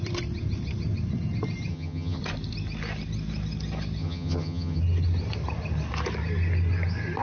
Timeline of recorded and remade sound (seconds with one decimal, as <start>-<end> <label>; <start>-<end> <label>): 0.0-1.7 recorded; 1.7-2.2 remade; 2.2-4.0 recorded; 4.0-4.8 remade; 4.8-7.2 recorded